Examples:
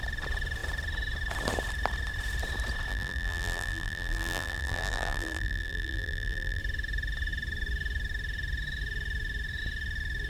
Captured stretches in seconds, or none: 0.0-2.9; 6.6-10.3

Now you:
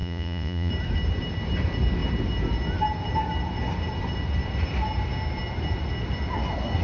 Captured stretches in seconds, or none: 0.7-6.8

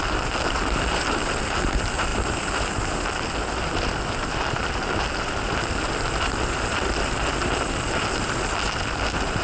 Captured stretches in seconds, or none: 0.0-9.4

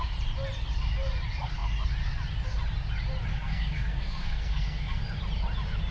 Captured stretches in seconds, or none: 0.0-3.3; 5.0-5.9

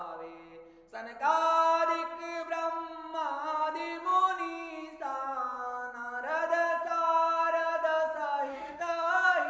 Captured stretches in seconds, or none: 0.0-8.5; 9.1-9.5

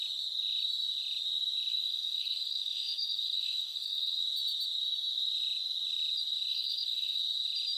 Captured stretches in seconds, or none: 0.0-1.7; 4.2-6.5; 7.2-7.8

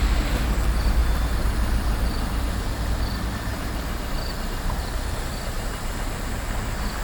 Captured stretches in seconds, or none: 0.0-5.3; 5.9-7.0